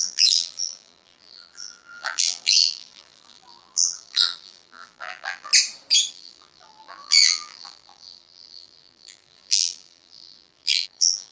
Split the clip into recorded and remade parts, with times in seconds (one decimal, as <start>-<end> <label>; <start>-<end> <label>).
0.0-5.5 remade; 5.5-6.1 recorded; 6.1-11.3 remade